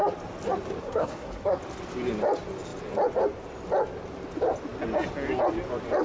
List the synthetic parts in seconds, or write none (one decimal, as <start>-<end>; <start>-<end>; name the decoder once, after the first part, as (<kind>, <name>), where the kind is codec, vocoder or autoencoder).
0.8-1.6 (codec, SNAC)